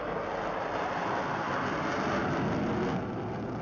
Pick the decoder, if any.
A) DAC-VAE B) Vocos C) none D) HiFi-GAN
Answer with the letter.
C